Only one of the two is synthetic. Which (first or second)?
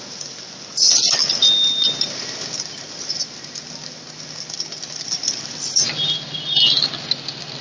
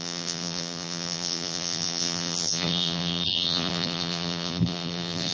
second